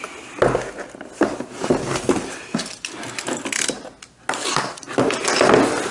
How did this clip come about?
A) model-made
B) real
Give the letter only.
B